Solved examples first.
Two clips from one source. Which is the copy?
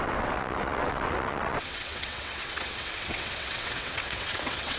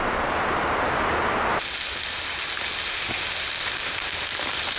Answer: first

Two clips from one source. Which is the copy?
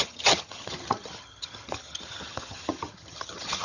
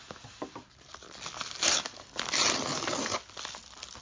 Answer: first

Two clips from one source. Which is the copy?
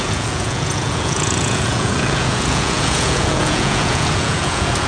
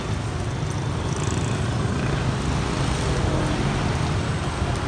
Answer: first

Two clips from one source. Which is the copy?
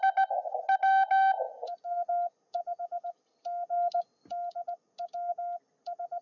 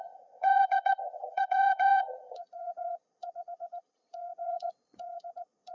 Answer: second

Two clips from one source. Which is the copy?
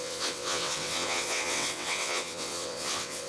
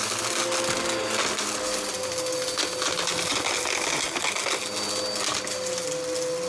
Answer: first